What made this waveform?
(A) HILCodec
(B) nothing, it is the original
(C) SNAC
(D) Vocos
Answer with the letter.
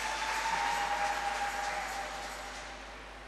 B